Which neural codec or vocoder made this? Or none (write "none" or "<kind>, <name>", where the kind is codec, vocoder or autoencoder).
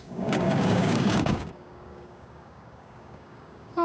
codec, DAC